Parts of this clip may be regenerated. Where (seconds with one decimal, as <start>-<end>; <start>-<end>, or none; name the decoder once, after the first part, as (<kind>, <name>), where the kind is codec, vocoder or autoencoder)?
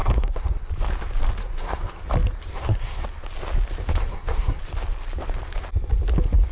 0.0-0.7 (codec, SNAC); 1.4-2.0; 2.5-3.0; 4.0-4.6